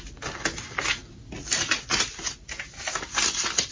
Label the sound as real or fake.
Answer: real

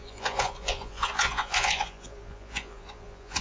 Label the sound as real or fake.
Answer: fake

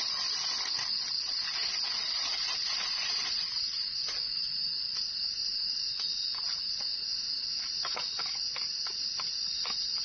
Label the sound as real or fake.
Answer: real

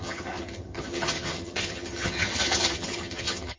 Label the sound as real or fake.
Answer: fake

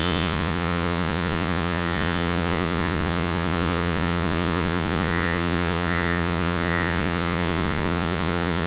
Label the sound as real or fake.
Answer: fake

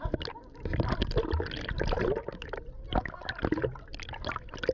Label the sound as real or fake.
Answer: real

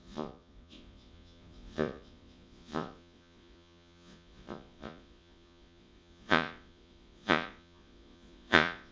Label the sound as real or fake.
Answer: fake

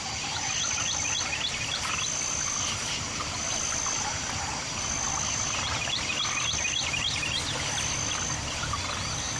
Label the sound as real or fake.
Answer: real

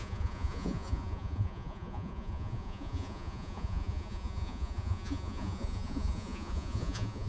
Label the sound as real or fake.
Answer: fake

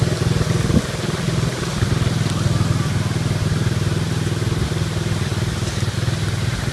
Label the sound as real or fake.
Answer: real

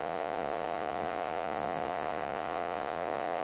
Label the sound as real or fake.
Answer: fake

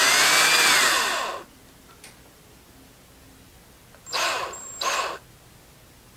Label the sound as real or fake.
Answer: real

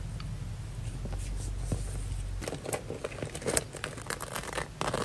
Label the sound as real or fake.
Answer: real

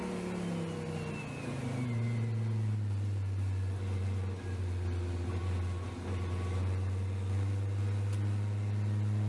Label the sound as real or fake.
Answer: real